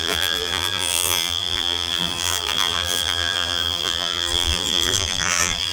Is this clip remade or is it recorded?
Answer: remade